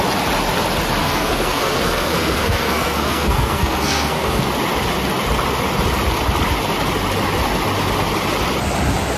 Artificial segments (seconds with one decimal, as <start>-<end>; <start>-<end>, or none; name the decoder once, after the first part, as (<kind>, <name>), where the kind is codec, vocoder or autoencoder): 1.0-4.4 (codec, SNAC)